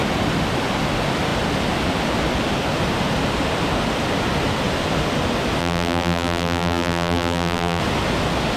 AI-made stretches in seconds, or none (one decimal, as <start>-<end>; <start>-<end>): 5.6-7.8